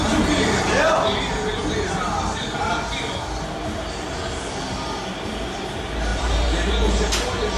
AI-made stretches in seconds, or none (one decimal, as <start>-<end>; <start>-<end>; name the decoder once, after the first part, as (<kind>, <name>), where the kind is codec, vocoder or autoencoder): 6.1-6.7 (vocoder, BigVGAN v2)